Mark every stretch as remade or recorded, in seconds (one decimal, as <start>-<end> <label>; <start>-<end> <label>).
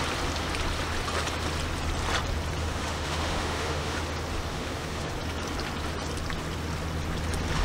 0.0-2.6 recorded; 2.6-4.0 remade; 4.0-4.5 recorded; 4.5-5.1 remade; 5.1-7.6 recorded